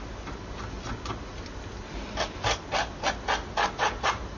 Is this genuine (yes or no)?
yes